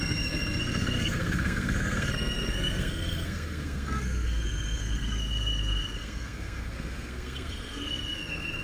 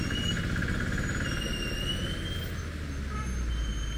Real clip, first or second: second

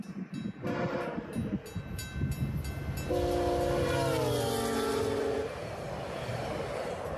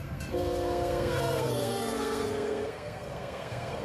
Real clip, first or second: first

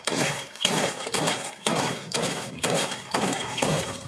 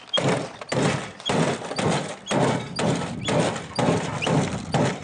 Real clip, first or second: second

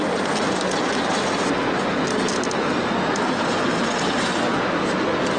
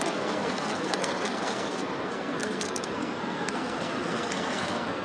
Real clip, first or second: first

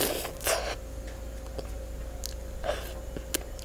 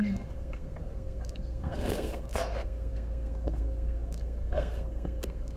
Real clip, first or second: first